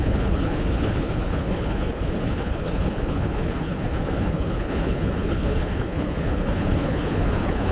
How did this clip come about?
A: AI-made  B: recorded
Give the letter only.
A